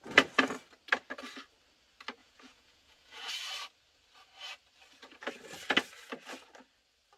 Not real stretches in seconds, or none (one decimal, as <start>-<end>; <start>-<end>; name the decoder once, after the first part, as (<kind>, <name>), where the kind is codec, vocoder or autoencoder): 2.2-3.3 (vocoder, Vocos)